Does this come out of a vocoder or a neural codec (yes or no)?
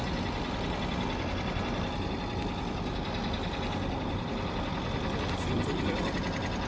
no